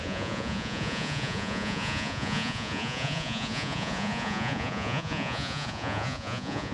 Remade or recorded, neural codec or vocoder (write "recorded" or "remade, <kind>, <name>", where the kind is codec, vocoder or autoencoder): remade, vocoder, Vocos